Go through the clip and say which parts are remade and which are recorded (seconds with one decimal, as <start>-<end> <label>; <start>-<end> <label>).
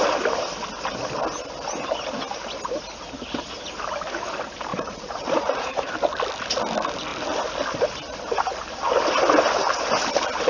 0.0-4.7 recorded; 4.7-5.9 remade; 5.9-10.5 recorded